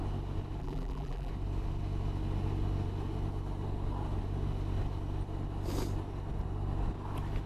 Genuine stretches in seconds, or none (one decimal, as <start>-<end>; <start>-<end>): 0.0-0.6; 1.3-7.5